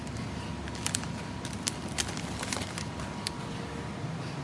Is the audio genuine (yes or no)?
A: yes